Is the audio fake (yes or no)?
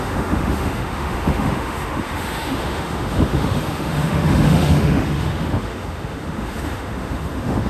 yes